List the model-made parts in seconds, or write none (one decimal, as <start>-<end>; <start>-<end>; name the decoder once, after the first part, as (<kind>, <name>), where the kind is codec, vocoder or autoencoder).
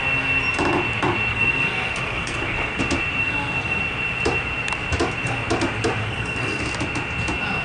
1.3-2.8 (codec, SNAC); 3.2-3.8; 6.0-6.6